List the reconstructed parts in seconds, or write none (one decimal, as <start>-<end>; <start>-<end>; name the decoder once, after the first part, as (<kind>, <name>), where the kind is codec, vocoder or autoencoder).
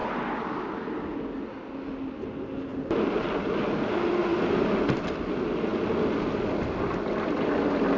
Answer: none